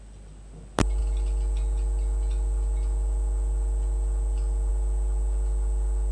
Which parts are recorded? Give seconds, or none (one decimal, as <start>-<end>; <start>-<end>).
0.0-6.1